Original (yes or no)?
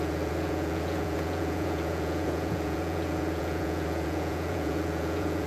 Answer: no